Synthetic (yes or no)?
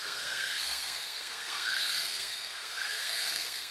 yes